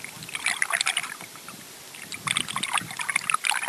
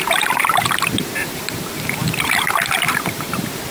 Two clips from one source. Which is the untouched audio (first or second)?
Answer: first